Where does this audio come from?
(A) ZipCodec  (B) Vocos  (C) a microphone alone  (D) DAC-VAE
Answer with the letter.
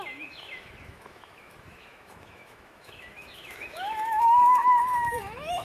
D